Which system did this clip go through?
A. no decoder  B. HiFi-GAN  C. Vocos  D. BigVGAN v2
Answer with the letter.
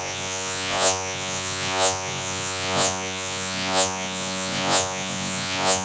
C